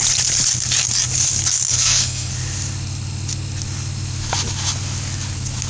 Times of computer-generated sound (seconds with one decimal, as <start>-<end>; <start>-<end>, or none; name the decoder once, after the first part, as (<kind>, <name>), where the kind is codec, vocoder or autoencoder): 1.7-2.3 (codec, SNAC)